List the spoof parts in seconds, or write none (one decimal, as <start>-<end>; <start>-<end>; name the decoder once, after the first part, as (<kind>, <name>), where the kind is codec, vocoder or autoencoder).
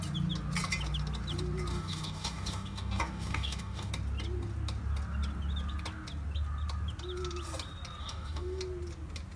1.7-3.9 (codec, DAC); 8.0-8.6